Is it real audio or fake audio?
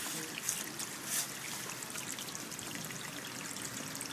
real